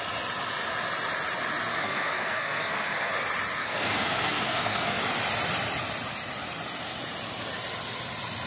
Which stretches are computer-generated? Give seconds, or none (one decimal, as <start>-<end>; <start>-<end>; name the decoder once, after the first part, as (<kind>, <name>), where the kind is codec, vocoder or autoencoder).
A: 1.7-3.1 (codec, SNAC); 3.6-5.0